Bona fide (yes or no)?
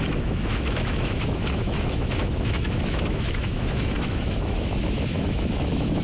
no